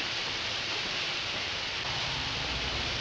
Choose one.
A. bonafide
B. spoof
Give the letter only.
B